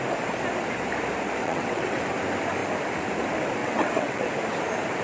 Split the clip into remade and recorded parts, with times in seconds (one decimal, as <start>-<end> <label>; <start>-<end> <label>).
0.0-1.4 recorded; 1.4-2.0 remade; 2.0-3.6 recorded; 3.6-4.3 remade; 4.3-5.0 recorded